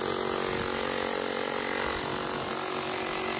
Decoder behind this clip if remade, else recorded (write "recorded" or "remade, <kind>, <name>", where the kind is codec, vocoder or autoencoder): recorded